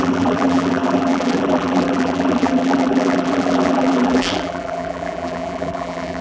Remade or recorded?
remade